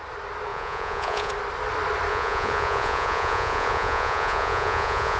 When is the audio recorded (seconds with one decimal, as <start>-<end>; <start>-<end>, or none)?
0.0-0.5; 1.3-2.1